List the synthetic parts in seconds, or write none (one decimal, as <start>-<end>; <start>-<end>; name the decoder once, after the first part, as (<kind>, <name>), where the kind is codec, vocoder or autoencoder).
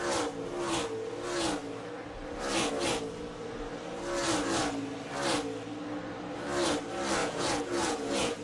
7.2-8.4 (vocoder, Vocos)